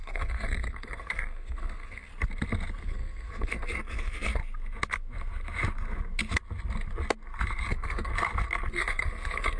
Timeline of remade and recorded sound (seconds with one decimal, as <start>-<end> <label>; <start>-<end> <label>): 0.0-2.1 remade; 2.1-2.8 recorded; 2.8-4.4 remade; 4.4-7.7 recorded; 7.7-8.1 remade; 8.1-8.7 recorded; 8.7-9.6 remade